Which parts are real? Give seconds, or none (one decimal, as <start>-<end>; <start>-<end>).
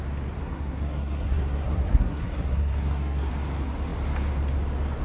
0.0-0.4; 3.3-5.0